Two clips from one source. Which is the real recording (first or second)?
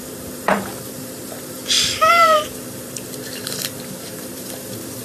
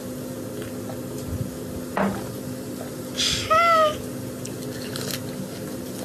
second